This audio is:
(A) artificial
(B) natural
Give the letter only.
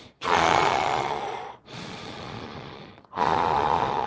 A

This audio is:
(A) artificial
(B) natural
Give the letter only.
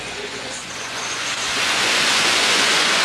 A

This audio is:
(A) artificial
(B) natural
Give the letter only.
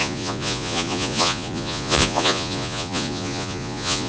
A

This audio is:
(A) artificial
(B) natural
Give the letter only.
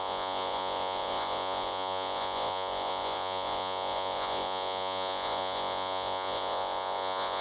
A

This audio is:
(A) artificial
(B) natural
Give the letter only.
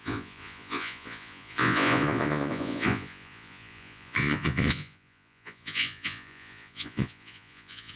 A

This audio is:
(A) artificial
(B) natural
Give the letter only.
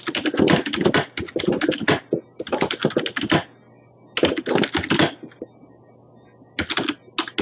B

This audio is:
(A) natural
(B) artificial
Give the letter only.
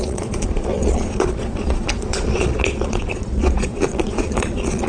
B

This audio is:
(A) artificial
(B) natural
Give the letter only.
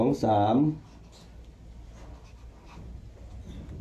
B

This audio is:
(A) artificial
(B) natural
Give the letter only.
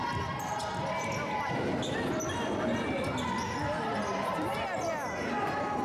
B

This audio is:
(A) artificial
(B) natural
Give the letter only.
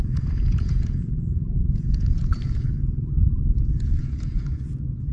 A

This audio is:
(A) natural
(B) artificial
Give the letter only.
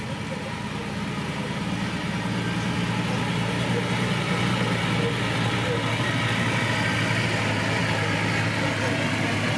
A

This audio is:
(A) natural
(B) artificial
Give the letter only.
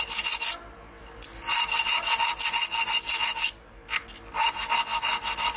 A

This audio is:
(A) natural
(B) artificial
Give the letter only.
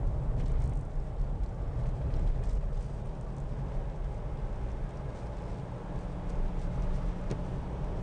A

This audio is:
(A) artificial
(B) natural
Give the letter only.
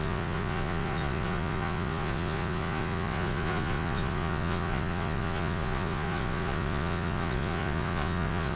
A